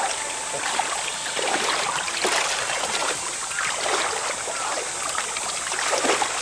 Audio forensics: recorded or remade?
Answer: recorded